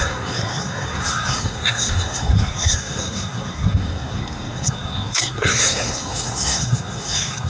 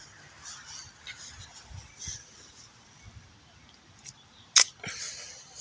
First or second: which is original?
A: second